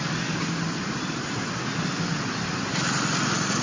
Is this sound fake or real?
real